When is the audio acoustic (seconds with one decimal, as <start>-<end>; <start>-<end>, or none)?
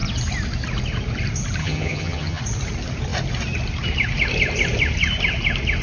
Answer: 0.0-1.6; 2.4-5.8